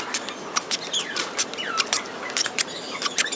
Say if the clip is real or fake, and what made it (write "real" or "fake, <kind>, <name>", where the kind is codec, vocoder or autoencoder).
real